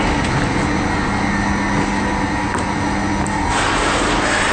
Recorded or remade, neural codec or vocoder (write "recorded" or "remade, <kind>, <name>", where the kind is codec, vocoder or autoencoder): recorded